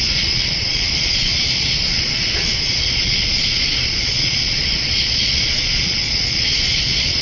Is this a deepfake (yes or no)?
yes